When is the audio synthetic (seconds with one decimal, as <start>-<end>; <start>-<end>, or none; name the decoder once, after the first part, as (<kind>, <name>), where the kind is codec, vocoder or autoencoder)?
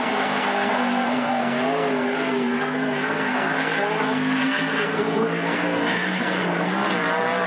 0.0-6.7 (codec, SNAC)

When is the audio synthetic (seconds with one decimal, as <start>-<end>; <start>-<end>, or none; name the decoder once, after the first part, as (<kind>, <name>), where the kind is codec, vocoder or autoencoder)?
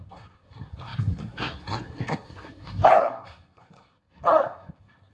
0.0-5.1 (codec, SNAC)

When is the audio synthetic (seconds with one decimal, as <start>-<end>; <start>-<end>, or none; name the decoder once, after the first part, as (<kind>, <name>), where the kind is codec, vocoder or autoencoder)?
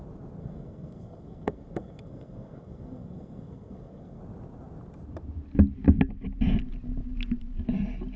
0.4-4.2 (codec, SNAC)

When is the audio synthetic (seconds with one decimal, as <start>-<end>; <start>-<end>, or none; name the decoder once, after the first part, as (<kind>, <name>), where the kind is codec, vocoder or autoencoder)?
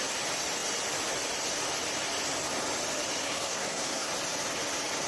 3.2-4.1 (codec, SNAC)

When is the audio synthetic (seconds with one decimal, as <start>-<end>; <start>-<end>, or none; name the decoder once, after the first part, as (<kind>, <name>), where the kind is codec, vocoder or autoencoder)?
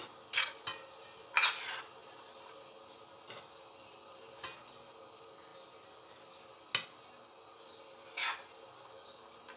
none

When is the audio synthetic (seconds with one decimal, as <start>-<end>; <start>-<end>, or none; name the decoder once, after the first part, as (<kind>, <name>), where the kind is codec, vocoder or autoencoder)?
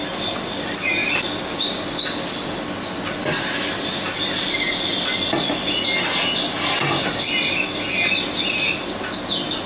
none